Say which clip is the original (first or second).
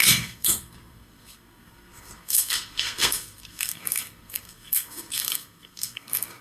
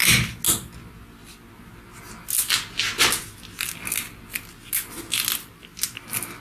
second